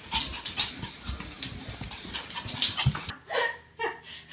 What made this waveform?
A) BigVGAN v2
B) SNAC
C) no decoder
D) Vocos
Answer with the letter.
C